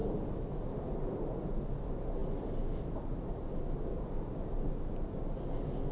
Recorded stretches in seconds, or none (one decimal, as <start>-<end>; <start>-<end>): 0.0-5.9